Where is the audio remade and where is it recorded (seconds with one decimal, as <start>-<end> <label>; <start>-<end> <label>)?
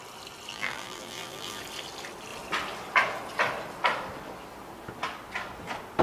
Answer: 0.0-0.5 recorded; 0.5-1.6 remade; 1.6-6.0 recorded